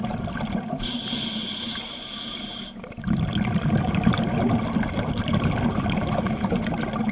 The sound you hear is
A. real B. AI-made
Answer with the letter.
A